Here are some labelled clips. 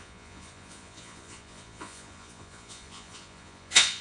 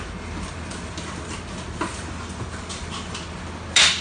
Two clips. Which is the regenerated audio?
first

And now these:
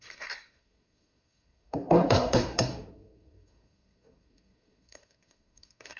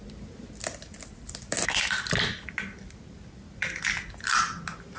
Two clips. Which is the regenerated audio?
first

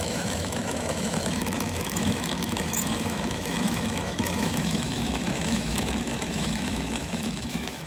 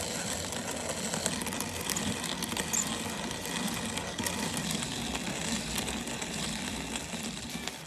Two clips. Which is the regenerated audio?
first